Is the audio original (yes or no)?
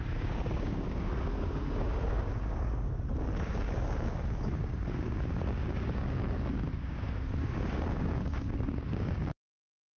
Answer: no